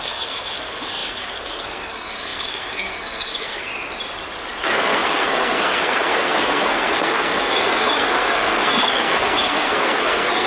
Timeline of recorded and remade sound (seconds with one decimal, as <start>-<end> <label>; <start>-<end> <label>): 0.0-3.7 remade; 3.7-4.6 recorded; 4.6-10.5 remade